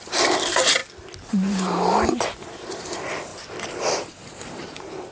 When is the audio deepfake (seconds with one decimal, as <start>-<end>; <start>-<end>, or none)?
0.0-0.8; 1.3-3.3; 3.8-5.1